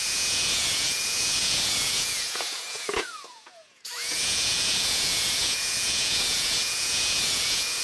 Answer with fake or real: fake